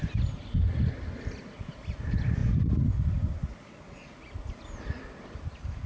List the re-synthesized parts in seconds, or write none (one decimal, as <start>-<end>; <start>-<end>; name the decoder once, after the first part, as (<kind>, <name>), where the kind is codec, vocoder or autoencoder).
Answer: none